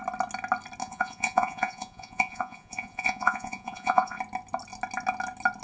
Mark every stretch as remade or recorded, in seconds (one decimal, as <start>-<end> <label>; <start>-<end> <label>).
0.0-0.8 recorded; 0.8-4.2 remade; 4.2-5.6 recorded